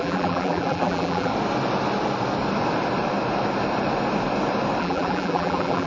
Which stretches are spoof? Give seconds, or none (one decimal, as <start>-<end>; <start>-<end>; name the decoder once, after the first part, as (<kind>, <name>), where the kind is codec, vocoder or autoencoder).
0.0-1.3 (vocoder, BigVGAN v2); 4.8-5.9